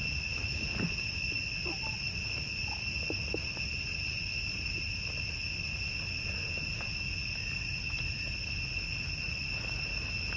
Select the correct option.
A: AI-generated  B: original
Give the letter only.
B